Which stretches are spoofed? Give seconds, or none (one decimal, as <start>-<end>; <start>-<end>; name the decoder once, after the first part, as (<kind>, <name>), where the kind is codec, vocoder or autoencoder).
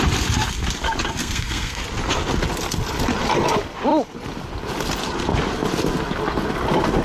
1.2-1.8 (codec, SNAC)